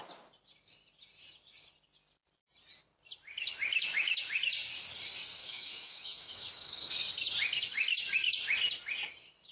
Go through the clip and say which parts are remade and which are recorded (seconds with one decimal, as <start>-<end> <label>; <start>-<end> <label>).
0.0-5.4 recorded; 5.4-6.9 remade; 6.9-9.5 recorded